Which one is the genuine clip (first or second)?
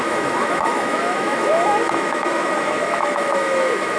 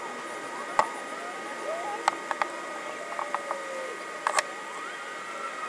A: second